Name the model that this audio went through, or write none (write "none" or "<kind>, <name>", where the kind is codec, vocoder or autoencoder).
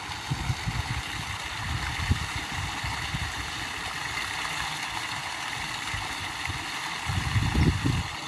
none